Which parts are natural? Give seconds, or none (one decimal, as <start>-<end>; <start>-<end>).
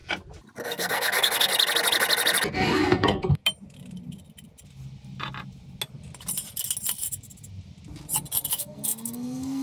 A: 0.0-0.6; 1.5-2.5; 3.4-8.5